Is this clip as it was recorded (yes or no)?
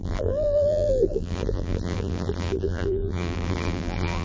no